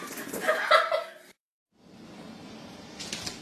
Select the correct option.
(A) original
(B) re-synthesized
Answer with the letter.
A